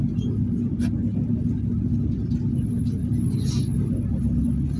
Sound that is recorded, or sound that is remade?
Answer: recorded